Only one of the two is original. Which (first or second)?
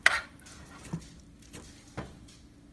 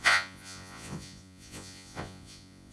first